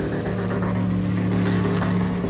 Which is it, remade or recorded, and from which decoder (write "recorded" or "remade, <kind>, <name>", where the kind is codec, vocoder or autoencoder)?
recorded